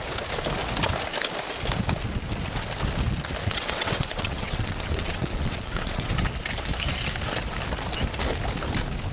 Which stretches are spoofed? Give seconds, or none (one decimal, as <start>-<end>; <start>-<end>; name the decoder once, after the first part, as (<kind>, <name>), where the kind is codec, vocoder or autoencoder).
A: 3.4-6.1 (vocoder, WaveNeXt)